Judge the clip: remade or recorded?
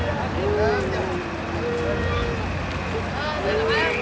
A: recorded